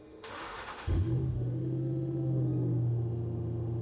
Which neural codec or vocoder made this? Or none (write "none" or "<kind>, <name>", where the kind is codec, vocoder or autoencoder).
autoencoder, DAC-VAE